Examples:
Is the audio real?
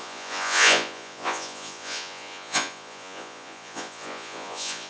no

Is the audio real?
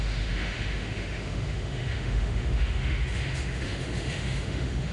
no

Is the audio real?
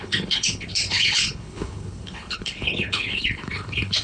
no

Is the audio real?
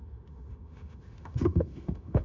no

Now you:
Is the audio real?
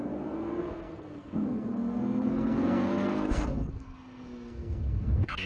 no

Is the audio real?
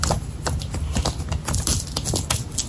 yes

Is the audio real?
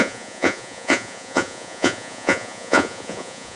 no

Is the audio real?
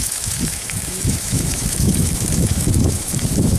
no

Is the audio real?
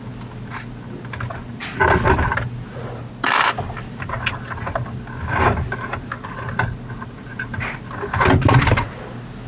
yes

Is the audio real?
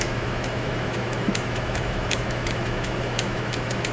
no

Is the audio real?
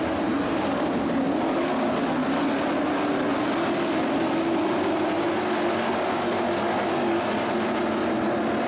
yes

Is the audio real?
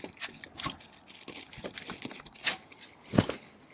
yes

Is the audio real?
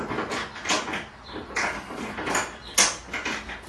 yes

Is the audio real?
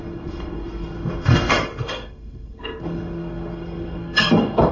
no